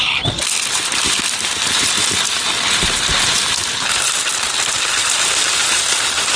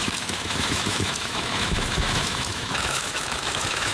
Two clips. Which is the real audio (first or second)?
first